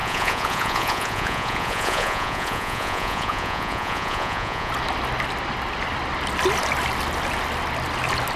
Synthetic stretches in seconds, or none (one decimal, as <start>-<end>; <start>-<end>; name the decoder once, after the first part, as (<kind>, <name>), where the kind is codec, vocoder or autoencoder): 0.0-4.7 (vocoder, Vocos)